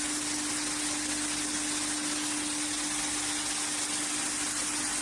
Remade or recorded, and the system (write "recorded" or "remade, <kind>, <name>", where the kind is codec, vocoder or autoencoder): recorded